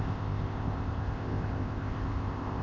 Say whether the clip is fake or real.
fake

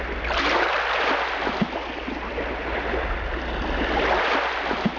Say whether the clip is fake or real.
real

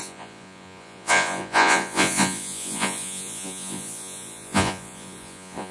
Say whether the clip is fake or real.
fake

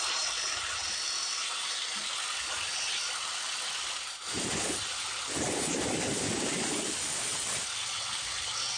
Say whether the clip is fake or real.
real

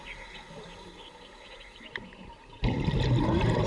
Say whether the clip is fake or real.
real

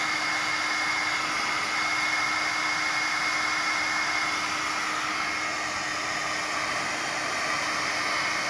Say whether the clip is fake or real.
real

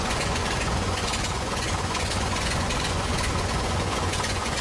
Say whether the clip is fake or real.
fake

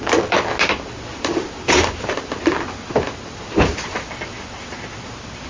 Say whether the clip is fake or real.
real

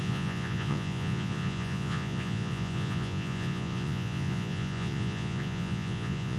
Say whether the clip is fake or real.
fake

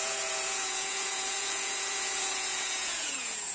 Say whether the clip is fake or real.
fake